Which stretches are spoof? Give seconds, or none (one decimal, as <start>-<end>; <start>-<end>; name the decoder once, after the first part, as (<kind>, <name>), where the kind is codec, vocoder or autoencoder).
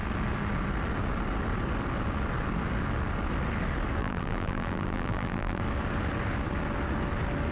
4.0-5.6 (vocoder, BigVGAN v2)